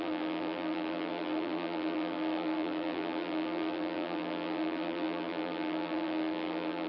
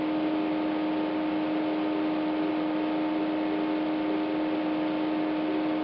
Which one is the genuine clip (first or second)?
second